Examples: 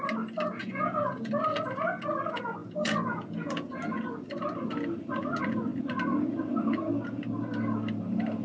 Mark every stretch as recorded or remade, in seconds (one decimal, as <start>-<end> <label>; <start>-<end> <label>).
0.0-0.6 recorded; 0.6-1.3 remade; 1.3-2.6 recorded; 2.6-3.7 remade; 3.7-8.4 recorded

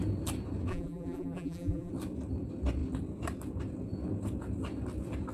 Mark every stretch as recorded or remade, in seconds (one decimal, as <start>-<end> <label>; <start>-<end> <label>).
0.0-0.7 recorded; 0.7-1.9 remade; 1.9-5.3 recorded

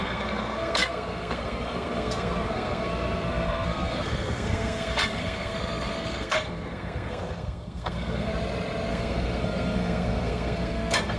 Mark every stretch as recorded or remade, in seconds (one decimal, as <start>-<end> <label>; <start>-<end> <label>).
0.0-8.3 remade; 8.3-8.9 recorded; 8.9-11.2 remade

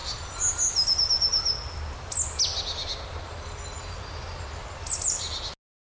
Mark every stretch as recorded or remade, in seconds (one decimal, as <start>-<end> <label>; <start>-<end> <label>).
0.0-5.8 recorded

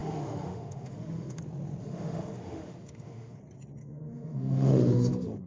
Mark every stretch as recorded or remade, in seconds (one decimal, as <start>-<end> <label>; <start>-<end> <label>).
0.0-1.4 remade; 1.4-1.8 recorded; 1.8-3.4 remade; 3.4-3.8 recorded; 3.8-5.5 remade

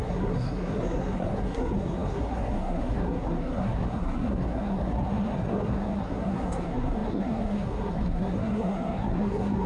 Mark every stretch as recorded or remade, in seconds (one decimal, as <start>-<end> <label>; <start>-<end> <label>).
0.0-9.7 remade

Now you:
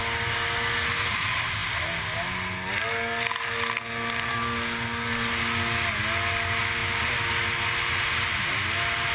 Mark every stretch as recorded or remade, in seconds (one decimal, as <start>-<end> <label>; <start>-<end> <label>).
0.0-9.1 recorded